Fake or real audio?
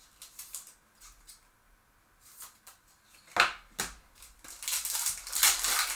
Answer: real